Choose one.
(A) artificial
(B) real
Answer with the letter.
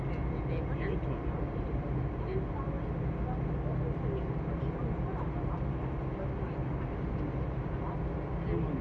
B